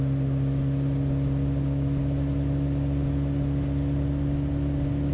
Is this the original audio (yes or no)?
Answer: yes